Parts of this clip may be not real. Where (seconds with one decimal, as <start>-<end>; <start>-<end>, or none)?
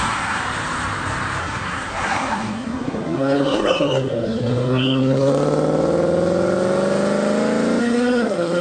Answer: 0.0-0.4; 1.4-5.3; 7.8-8.6